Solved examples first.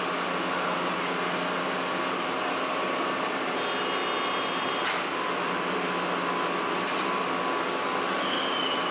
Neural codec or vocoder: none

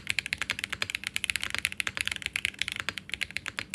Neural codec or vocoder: none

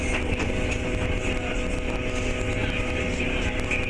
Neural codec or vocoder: none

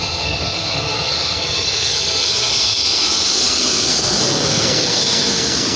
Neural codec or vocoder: codec, SNAC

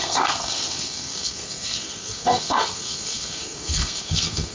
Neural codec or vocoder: codec, SNAC